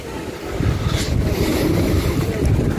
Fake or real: real